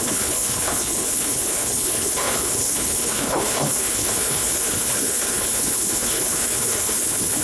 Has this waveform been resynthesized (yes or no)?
yes